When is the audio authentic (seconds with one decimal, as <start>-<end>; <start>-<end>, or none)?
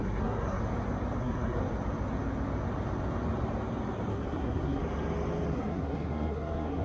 0.6-1.2; 1.6-4.1; 4.8-5.5